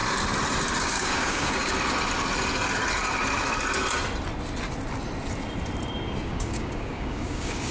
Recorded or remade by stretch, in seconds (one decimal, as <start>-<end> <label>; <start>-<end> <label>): 0.0-0.8 recorded; 0.8-1.7 remade; 1.7-6.3 recorded; 6.3-7.7 remade

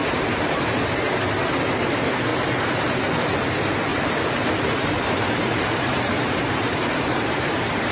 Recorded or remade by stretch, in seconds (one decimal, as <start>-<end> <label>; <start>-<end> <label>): 0.0-1.1 remade; 1.1-3.9 recorded; 3.9-7.9 remade